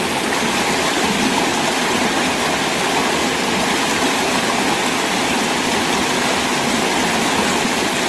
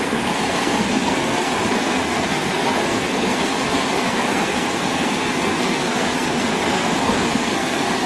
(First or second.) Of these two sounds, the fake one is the second